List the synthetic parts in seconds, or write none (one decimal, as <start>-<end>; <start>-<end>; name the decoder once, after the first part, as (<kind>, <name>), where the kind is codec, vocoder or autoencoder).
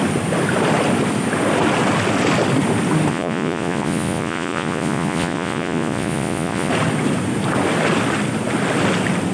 3.1-6.7 (vocoder, Vocos)